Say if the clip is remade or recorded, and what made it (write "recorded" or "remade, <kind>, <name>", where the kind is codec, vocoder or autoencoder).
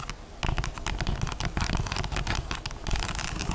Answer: recorded